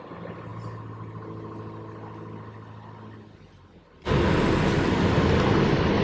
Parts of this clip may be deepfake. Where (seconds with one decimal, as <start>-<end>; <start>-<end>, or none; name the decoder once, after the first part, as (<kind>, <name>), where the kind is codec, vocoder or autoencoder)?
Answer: none